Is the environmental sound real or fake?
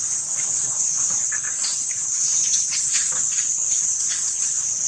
fake